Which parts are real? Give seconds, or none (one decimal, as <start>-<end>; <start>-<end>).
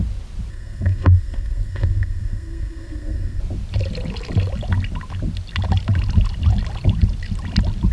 0.0-0.5; 3.4-7.9